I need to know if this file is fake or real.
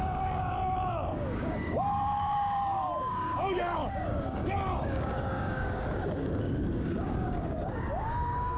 fake